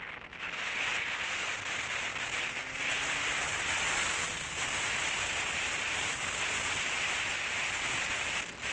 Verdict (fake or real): real